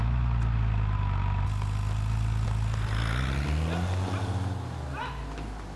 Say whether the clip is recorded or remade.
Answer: recorded